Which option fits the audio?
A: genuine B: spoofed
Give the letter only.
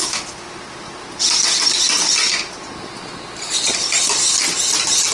A